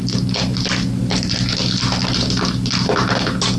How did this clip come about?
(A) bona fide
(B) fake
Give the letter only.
A